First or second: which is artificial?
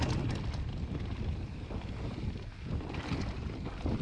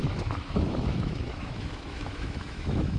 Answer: second